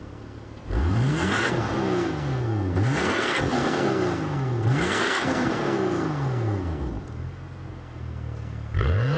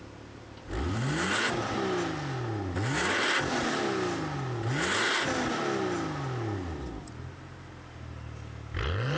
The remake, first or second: first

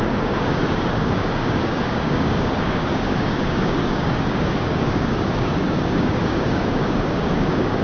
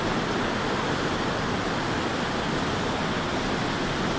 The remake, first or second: first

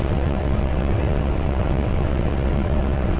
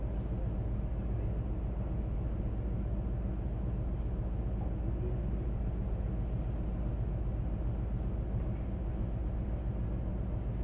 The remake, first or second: first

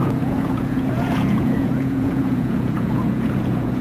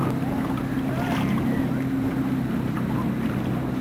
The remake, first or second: first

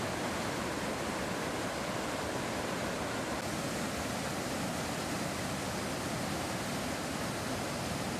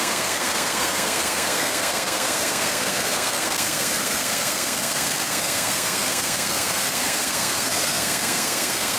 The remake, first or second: second